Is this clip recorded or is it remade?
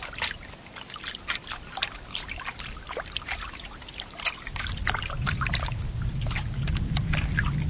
recorded